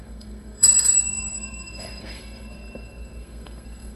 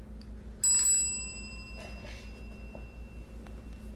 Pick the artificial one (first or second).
first